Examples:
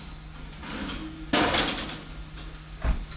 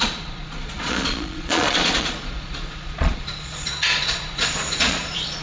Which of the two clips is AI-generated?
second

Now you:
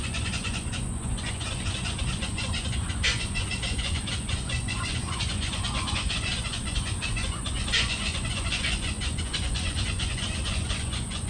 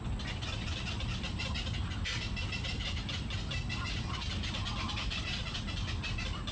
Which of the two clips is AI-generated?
first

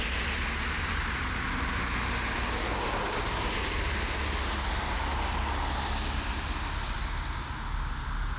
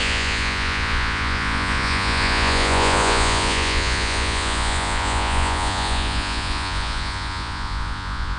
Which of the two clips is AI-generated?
second